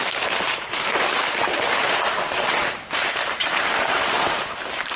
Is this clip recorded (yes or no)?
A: no